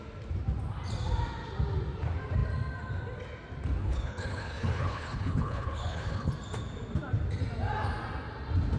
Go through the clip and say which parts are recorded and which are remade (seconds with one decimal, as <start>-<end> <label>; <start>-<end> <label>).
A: 0.0-3.8 recorded; 3.8-6.3 remade; 6.3-8.8 recorded